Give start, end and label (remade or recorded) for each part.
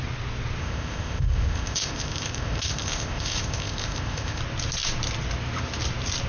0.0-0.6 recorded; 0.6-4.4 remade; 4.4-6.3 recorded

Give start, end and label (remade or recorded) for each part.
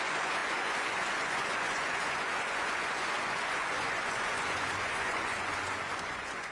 0.0-6.5 remade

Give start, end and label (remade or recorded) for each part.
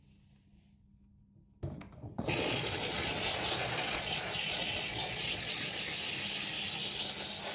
0.0-2.0 recorded; 2.0-5.9 remade; 5.9-7.5 recorded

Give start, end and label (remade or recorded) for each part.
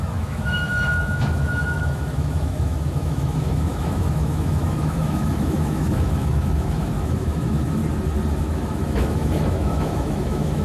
0.0-7.8 remade; 7.8-8.3 recorded; 8.3-10.6 remade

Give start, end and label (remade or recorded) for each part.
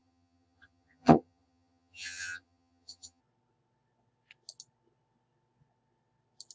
0.0-3.2 remade; 3.2-6.5 recorded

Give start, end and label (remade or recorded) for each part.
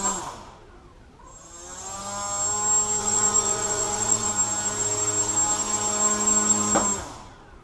0.0-3.0 recorded; 3.0-4.3 remade; 4.3-7.6 recorded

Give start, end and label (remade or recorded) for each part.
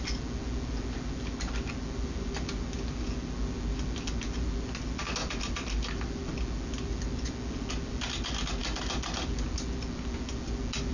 0.0-10.9 recorded